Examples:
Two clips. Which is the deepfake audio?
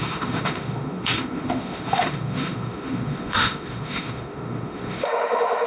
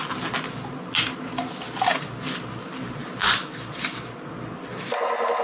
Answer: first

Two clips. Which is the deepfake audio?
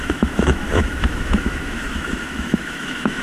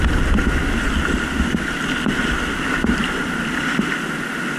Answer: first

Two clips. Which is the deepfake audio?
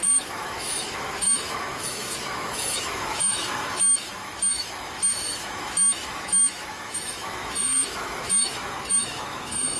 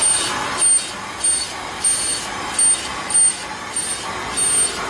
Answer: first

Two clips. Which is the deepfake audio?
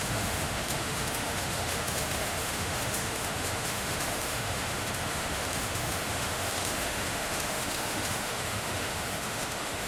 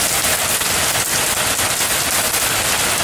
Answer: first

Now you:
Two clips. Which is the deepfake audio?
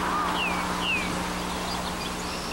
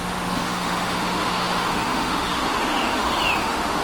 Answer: second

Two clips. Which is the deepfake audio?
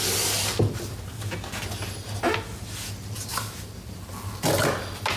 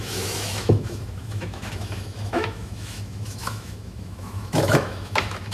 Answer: second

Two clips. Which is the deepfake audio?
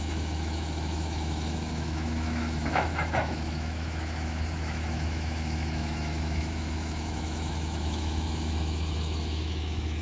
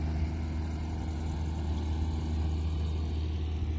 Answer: first